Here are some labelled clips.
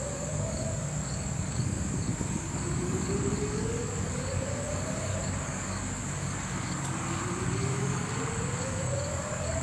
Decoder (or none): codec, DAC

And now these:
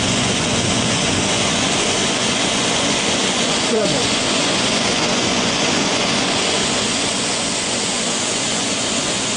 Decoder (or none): vocoder, Vocos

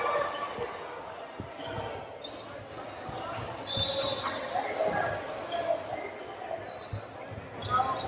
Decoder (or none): none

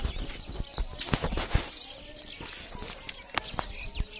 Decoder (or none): none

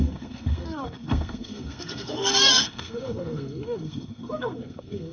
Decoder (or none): codec, SNAC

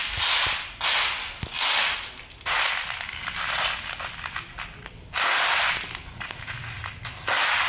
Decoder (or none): none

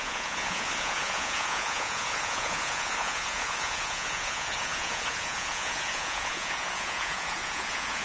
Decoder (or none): vocoder, Vocos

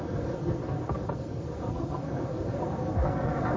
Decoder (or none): codec, SNAC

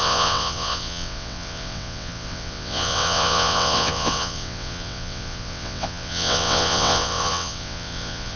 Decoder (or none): vocoder, WaveNeXt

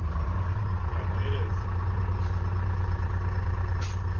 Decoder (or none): vocoder, BigVGAN v2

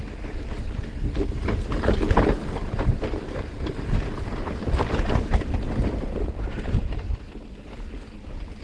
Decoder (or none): none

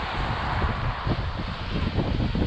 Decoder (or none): none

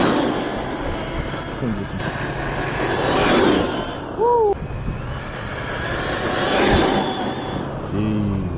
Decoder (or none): none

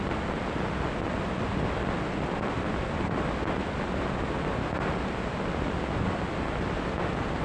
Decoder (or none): none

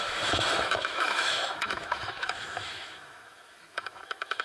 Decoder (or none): autoencoder, DAC-VAE